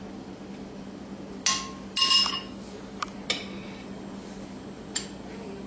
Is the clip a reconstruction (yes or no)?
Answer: no